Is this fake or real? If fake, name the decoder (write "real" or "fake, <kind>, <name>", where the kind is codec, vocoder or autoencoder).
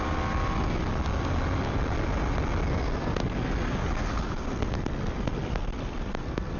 real